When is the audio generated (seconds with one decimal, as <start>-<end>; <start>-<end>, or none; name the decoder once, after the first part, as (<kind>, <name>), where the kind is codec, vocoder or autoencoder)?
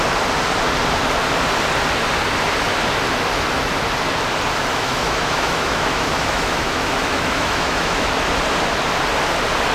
4.7-8.1 (autoencoder, DAC-VAE)